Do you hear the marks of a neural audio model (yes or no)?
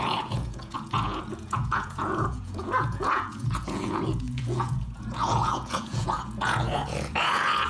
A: yes